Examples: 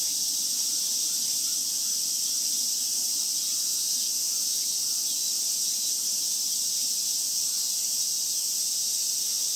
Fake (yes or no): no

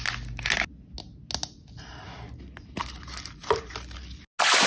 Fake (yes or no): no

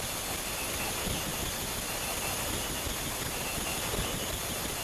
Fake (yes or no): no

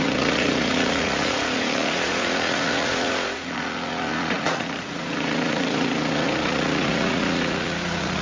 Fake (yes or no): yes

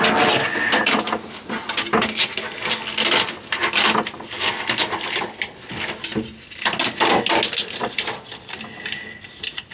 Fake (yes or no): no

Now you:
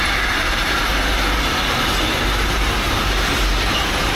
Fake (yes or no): no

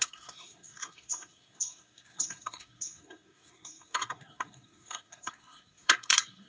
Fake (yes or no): yes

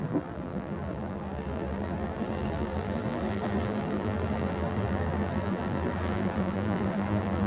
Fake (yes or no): yes